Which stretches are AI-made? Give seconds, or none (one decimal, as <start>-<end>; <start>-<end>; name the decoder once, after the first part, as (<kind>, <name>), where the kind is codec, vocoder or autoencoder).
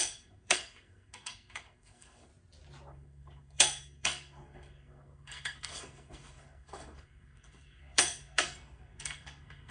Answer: 0.0-2.3 (codec, SNAC); 2.9-9.7